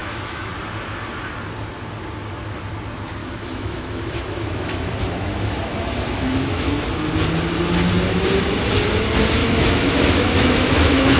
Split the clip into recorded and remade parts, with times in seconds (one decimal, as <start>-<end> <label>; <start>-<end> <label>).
0.0-0.5 remade; 0.5-3.2 recorded; 3.2-6.8 remade; 6.8-9.4 recorded; 9.4-11.2 remade